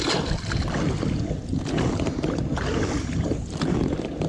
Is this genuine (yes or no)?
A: yes